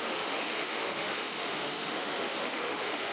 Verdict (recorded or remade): remade